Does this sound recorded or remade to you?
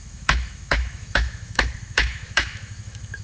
remade